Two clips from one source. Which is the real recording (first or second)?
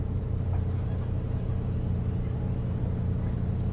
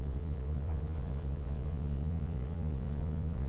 first